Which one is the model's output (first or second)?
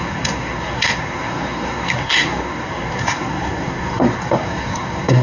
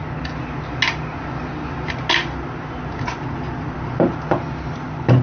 first